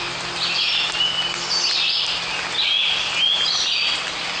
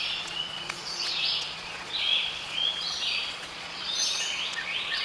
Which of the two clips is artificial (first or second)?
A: second